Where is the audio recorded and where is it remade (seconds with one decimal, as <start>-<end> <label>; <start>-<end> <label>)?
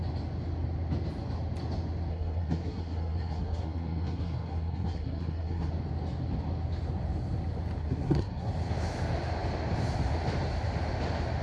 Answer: 0.0-2.1 recorded; 2.1-5.7 remade; 5.7-7.8 recorded; 7.8-8.5 remade; 8.5-11.4 recorded